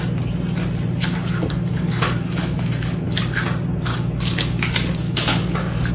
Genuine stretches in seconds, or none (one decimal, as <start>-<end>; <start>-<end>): 0.0-1.0; 3.2-3.9

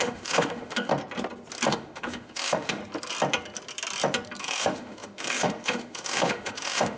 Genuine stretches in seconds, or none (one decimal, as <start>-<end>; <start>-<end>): 0.9-1.7; 2.8-4.4

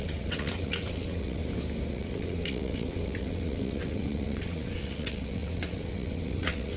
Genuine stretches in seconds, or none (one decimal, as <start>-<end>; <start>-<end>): 1.4-1.9